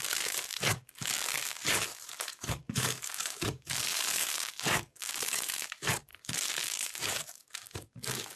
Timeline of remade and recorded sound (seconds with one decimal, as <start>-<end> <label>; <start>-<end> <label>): 0.0-8.4 remade